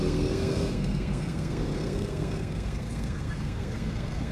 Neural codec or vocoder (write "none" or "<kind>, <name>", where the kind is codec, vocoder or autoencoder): codec, SNAC